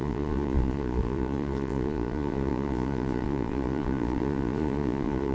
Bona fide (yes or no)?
no